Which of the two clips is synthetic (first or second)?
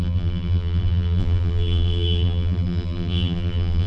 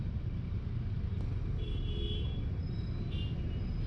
first